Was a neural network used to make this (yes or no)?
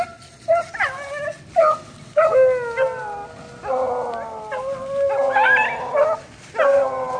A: no